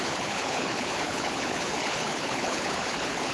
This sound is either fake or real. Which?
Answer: fake